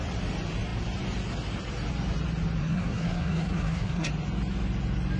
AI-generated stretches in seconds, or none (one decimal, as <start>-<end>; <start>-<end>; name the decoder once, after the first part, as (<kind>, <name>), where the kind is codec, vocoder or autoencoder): 2.6-4.1 (codec, SNAC)